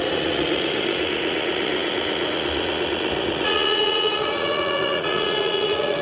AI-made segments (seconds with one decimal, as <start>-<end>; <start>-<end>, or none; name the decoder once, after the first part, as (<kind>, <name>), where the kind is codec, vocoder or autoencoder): 0.0-6.0 (vocoder, Vocos)